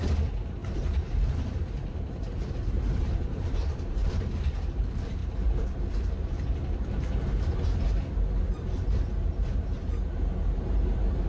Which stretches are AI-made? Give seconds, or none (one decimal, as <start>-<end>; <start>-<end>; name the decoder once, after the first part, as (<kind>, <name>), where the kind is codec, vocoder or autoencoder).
0.0-11.3 (vocoder, BigVGAN v2)